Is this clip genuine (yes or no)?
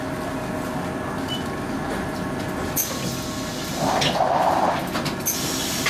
yes